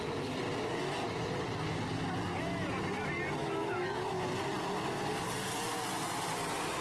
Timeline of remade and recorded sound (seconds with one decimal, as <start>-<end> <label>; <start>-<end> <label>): 0.0-3.4 recorded; 3.4-4.1 remade; 4.1-6.8 recorded